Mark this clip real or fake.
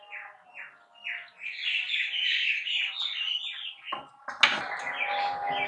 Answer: real